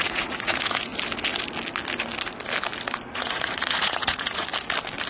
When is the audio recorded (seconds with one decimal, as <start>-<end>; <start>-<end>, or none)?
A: 0.9-3.1; 4.5-5.1

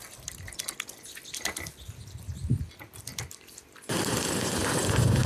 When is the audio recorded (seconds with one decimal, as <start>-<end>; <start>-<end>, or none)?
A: 0.0-5.3

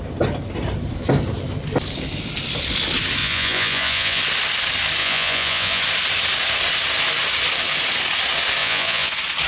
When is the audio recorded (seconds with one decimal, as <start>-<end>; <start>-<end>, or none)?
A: 0.0-3.2; 4.2-5.0; 5.8-8.6; 9.1-9.5

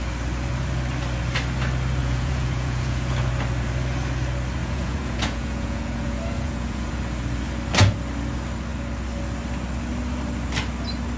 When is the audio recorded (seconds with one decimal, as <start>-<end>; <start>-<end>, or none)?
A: 0.0-2.0; 3.3-4.6; 6.9-11.2

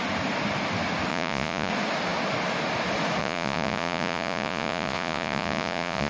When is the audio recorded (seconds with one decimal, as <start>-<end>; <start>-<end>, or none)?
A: 0.0-1.1; 1.7-3.2